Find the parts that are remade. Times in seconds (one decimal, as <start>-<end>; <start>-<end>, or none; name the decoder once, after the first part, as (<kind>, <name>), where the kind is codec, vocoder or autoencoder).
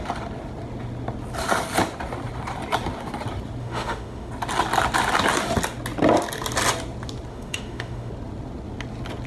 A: 3.6-4.3 (autoencoder, DAC-VAE); 7.3-8.1